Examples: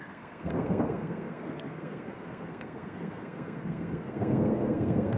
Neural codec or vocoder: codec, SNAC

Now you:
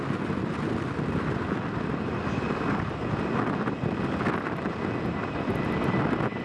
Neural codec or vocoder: none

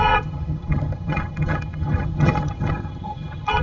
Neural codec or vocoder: vocoder, HiFi-GAN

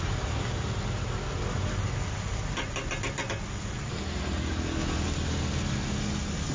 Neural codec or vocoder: none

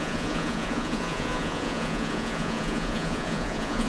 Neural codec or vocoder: vocoder, Vocos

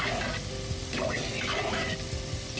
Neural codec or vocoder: none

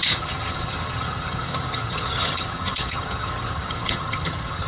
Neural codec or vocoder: vocoder, HiFi-GAN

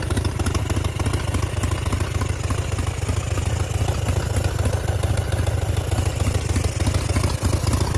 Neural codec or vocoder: none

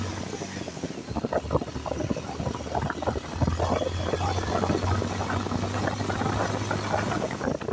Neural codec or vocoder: none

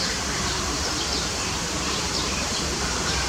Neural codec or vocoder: vocoder, BigVGAN v2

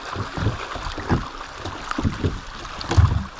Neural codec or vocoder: none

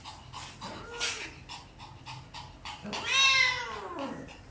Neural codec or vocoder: none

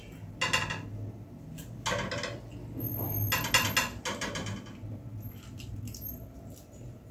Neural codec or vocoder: none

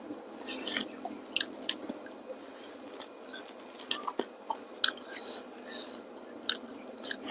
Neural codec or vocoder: none